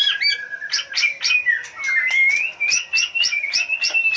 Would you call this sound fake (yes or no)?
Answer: no